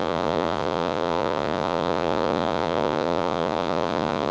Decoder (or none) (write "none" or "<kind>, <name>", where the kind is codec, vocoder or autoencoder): vocoder, Vocos